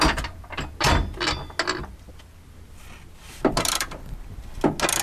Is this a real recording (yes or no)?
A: yes